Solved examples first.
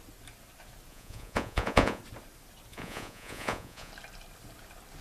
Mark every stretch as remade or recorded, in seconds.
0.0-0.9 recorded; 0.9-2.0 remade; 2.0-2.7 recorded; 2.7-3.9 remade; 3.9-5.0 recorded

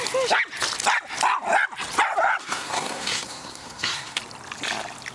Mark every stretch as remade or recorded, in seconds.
0.0-2.4 recorded; 2.4-4.2 remade; 4.2-5.1 recorded

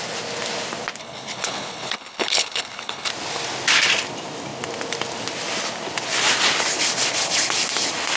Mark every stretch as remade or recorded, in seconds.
0.0-1.0 recorded; 1.0-3.1 remade; 3.1-8.2 recorded